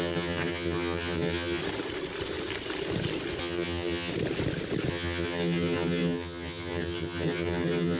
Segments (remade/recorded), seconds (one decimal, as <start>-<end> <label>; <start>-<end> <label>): 0.0-1.6 remade; 1.6-3.4 recorded; 3.4-4.1 remade; 4.1-4.9 recorded; 4.9-8.0 remade